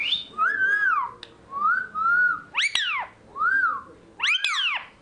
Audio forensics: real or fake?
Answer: real